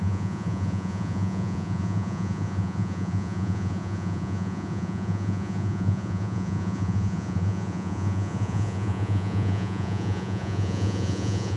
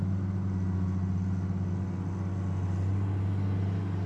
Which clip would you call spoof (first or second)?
first